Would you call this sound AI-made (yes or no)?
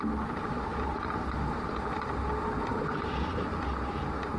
no